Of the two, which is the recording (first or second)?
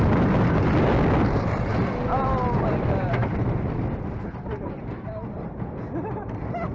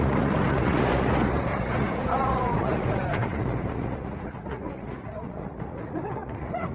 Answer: first